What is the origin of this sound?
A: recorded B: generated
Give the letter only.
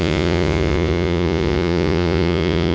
B